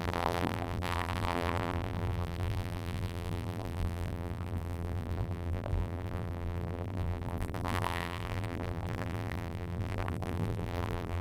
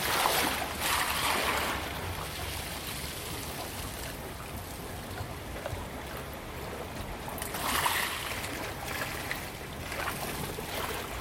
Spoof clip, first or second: first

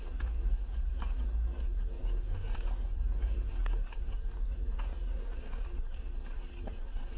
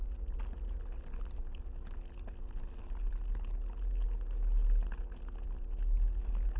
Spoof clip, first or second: first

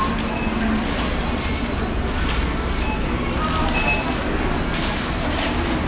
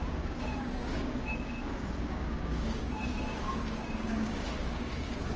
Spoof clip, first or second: second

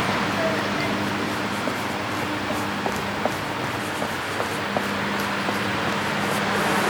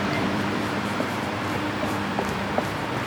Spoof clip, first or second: second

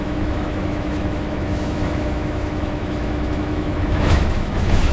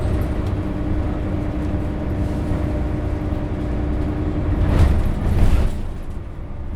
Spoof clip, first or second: first